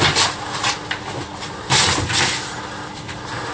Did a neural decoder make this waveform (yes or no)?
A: no